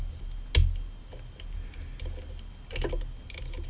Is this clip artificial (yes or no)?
no